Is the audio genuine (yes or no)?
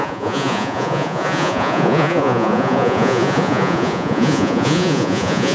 no